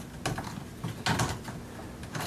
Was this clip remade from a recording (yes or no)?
no